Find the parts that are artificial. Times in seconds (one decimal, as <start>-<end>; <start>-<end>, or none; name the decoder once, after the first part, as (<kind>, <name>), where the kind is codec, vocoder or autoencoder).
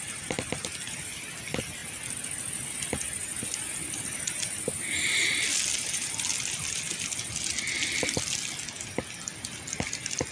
none